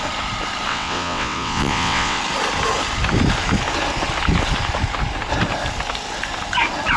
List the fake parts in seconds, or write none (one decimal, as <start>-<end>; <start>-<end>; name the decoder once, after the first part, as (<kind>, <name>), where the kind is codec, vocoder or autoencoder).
0.7-2.2 (vocoder, WaveNeXt)